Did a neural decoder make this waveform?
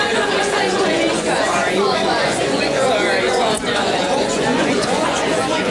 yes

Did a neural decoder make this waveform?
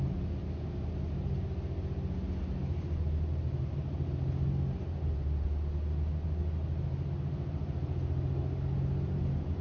no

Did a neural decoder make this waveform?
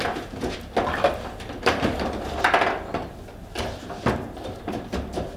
no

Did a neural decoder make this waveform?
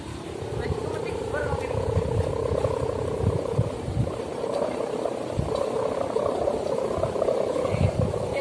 no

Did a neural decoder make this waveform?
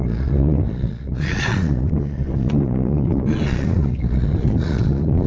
yes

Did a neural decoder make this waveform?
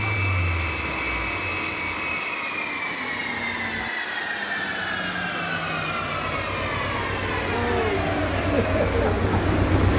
no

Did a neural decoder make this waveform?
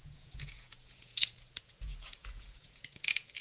yes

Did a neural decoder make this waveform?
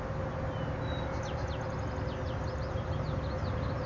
no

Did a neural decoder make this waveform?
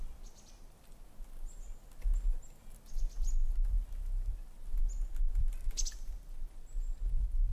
no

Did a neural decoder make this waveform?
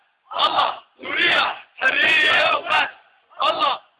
yes